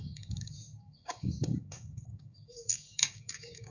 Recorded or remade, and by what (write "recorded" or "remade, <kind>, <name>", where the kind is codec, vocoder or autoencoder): remade, codec, DAC